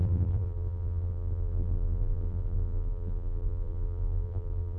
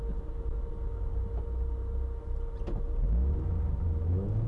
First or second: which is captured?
second